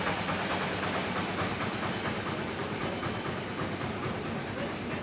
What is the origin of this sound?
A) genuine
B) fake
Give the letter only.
A